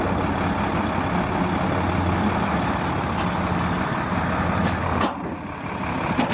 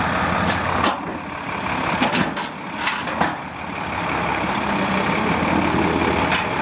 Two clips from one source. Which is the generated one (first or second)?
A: second